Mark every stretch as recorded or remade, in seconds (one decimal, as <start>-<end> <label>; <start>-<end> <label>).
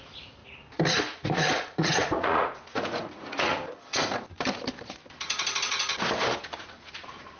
0.0-0.4 remade; 0.4-1.0 recorded; 1.0-3.5 remade; 3.5-6.6 recorded; 6.6-7.4 remade